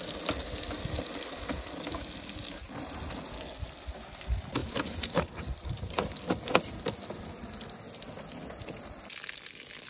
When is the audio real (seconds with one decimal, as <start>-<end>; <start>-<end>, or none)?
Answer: 0.0-4.6; 6.1-9.9